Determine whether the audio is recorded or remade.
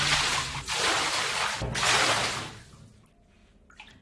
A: recorded